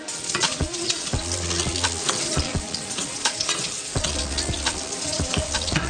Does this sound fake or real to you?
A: fake